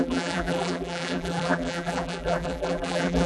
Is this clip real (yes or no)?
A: no